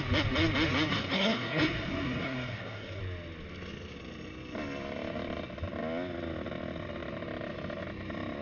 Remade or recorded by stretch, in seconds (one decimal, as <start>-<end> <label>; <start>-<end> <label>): 0.0-0.9 recorded; 0.9-3.0 remade; 3.0-8.4 recorded